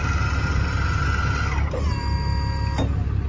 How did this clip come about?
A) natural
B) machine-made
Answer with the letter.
A